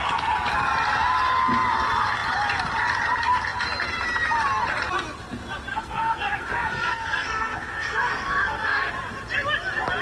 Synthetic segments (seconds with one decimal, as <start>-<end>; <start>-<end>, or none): 5.7-8.9